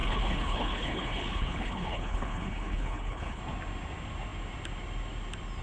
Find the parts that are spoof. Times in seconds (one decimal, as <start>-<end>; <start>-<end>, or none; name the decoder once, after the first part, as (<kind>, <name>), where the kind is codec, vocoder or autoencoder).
0.0-3.4 (codec, HILCodec)